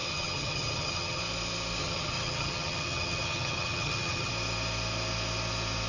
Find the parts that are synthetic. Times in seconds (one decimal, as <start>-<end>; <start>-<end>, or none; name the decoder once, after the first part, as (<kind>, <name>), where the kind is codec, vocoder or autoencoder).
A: 0.0-1.2 (vocoder, HiFi-GAN); 1.8-4.3